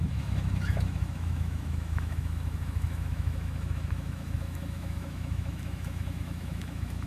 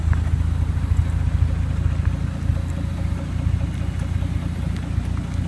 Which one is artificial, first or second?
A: first